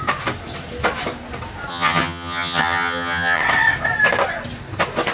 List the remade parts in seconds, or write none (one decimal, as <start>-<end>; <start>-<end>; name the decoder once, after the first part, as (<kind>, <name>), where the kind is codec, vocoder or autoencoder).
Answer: 1.7-3.4 (vocoder, HiFi-GAN)